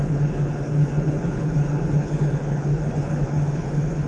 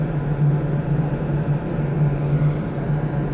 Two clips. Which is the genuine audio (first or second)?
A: second